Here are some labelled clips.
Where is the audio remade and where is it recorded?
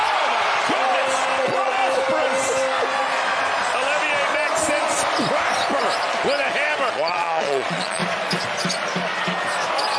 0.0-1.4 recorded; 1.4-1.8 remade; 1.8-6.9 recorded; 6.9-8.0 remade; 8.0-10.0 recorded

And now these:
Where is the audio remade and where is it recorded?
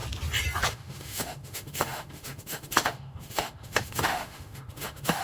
0.0-0.7 recorded; 0.7-5.2 remade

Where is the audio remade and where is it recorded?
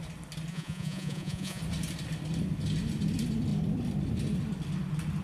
0.0-0.5 recorded; 0.5-1.6 remade; 1.6-5.2 recorded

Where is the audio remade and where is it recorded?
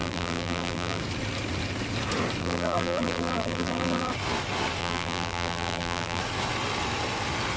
0.0-1.0 remade; 1.0-2.4 recorded; 2.4-4.1 remade; 4.1-4.8 recorded; 4.8-6.2 remade; 6.2-7.6 recorded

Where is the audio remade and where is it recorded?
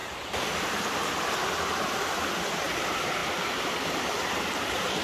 0.0-3.2 recorded; 3.2-5.0 remade